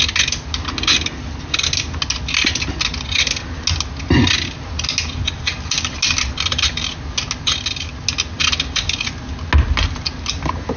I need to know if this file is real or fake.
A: real